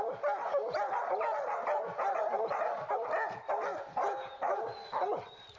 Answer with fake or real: real